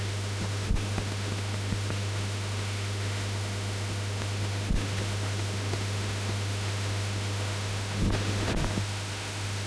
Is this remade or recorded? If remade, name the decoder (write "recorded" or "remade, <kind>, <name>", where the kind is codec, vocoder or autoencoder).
remade, autoencoder, DAC-VAE